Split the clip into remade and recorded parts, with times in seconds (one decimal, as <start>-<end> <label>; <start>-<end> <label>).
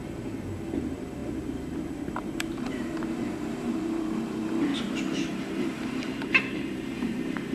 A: 0.0-4.7 remade; 4.7-5.6 recorded; 5.6-7.5 remade